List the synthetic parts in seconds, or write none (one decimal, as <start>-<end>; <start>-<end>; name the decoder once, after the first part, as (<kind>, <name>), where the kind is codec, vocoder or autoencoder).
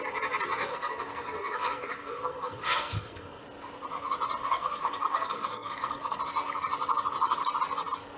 0.7-3.4 (codec, SNAC); 4.4-6.2